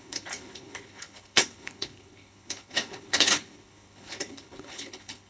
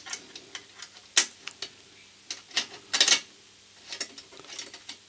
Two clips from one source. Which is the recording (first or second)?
second